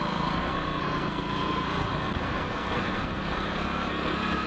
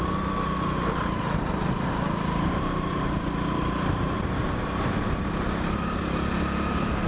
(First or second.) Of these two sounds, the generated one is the first